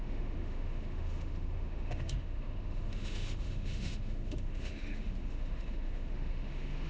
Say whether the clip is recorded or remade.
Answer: remade